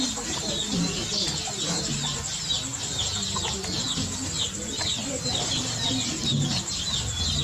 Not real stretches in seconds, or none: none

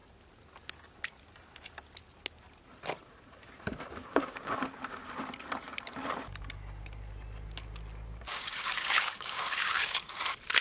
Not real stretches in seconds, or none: 4.0-4.5 (codec, DAC); 8.3-10.1

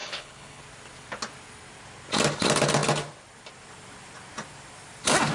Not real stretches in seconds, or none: 0.0-0.6 (codec, HILCodec)

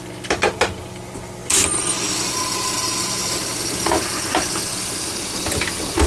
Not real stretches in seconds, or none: none

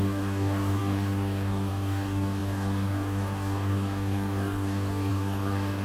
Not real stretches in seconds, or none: 0.0-5.8 (codec, DAC)

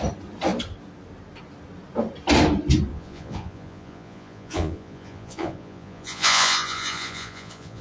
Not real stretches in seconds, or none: 2.9-7.8 (vocoder, Vocos)

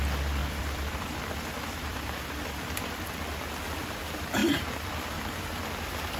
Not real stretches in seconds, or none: 0.4-3.1 (vocoder, BigVGAN v2); 4.4-5.6

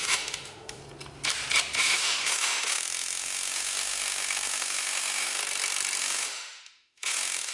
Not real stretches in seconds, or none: 0.0-0.8 (autoencoder, DAC-VAE); 1.8-5.4; 6.0-7.5